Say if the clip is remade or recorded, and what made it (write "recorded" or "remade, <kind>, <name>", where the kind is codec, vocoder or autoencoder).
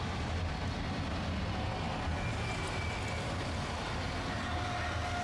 recorded